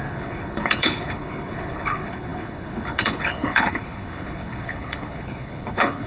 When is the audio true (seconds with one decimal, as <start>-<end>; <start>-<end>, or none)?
none